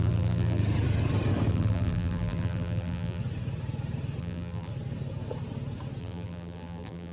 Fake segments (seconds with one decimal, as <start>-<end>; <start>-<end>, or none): 0.0-0.6; 1.5-3.2; 4.2-4.7; 6.0-7.1